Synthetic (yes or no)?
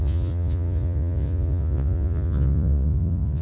yes